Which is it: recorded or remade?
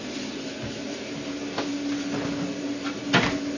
recorded